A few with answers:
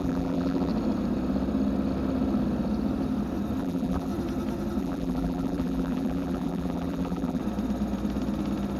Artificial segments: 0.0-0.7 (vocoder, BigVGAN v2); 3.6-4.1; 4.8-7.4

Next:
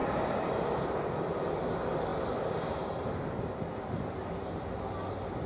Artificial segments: 0.0-1.1 (vocoder, BigVGAN v2); 2.1-5.5

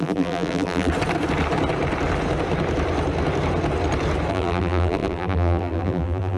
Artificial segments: 0.0-0.9 (vocoder, BigVGAN v2); 4.3-6.4